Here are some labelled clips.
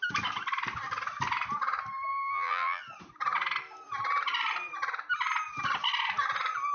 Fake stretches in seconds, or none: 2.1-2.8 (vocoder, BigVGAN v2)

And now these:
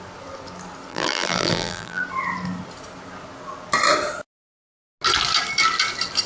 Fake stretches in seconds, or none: 0.9-2.0 (vocoder, BigVGAN v2)